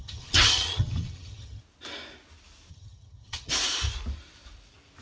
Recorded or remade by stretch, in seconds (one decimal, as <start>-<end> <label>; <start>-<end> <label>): 0.0-1.6 remade; 1.6-2.7 recorded; 2.7-3.5 remade; 3.5-5.0 recorded